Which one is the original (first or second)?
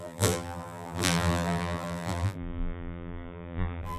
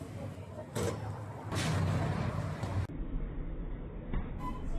second